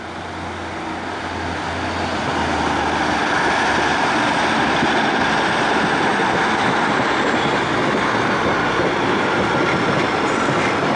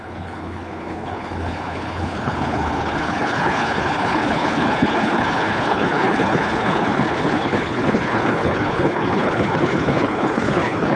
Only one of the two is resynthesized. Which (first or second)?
second